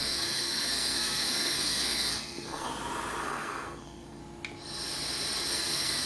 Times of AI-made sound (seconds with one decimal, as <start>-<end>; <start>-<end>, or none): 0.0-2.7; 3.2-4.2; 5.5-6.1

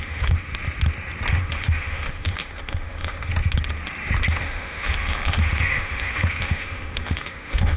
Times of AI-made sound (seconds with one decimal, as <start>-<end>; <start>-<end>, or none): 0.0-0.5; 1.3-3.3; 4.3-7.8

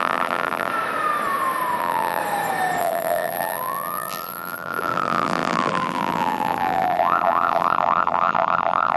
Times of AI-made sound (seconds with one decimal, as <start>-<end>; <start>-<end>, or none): 0.0-0.7; 1.8-2.2; 2.8-9.0